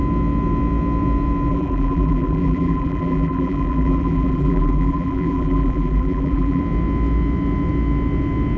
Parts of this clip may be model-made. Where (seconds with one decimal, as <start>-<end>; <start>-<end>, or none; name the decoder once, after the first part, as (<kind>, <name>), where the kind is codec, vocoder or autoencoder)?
1.5-6.6 (vocoder, BigVGAN v2)